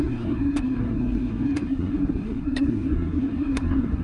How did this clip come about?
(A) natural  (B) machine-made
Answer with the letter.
B